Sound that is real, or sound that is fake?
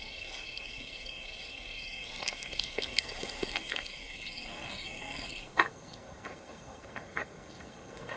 fake